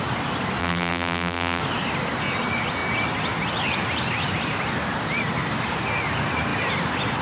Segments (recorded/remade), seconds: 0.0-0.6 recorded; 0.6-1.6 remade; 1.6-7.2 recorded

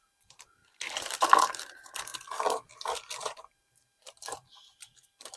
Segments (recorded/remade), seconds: 0.0-2.1 remade; 2.1-3.2 recorded; 3.2-5.4 remade

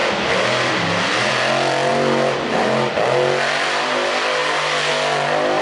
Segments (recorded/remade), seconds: 0.0-1.3 remade; 1.3-5.6 recorded

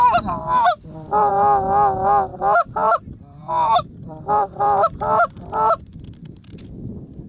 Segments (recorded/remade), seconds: 0.0-0.4 recorded; 0.4-1.3 remade; 1.3-2.3 recorded; 2.3-6.0 remade; 6.0-7.3 recorded

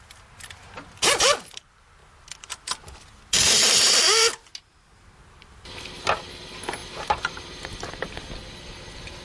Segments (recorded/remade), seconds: 0.0-6.8 recorded; 6.8-7.9 remade; 7.9-9.2 recorded

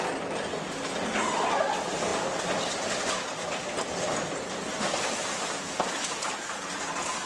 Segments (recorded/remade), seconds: 0.0-2.1 recorded; 2.1-6.5 remade; 6.5-7.3 recorded

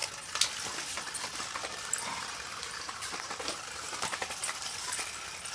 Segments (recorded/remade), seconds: 0.0-2.1 recorded; 2.1-4.3 remade; 4.3-5.5 recorded

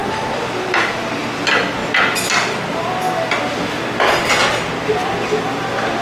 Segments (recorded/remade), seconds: 0.0-6.0 recorded